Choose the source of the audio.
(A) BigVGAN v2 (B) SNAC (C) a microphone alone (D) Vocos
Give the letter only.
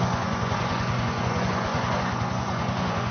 D